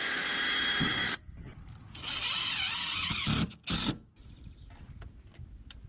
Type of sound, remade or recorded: recorded